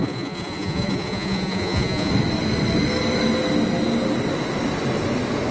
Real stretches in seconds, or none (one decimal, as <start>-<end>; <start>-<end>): 2.1-5.5